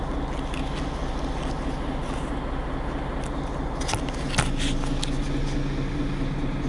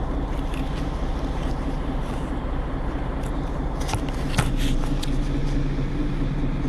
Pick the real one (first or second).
first